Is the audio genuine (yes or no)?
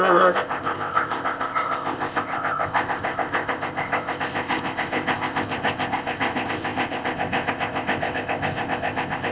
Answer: no